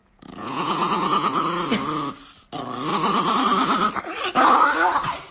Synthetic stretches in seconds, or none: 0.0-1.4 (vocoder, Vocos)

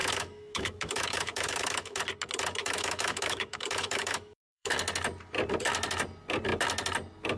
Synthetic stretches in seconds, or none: 0.0-2.0 (autoencoder, DAC-VAE); 2.6-4.7